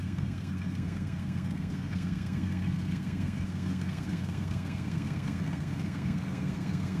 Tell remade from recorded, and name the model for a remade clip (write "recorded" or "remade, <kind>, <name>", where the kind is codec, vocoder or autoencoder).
remade, codec, SNAC